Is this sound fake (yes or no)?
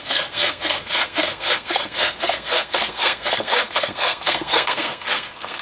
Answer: yes